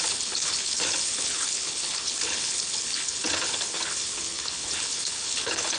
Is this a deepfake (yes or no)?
yes